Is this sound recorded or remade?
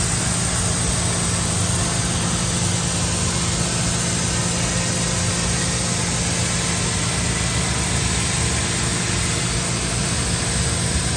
recorded